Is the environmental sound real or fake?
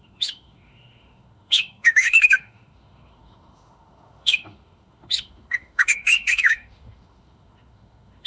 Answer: fake